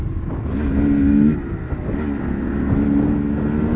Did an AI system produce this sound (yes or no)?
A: no